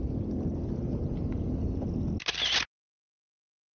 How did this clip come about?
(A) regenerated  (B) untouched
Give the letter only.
B